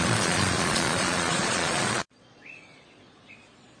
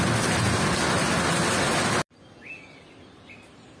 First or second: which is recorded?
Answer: second